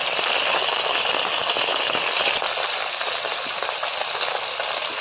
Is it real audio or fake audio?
real